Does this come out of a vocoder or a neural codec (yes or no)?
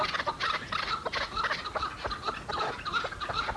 no